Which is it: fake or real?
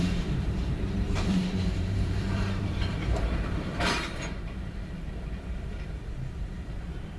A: fake